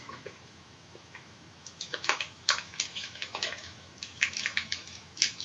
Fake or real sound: fake